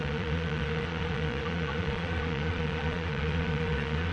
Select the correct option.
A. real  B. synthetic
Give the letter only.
B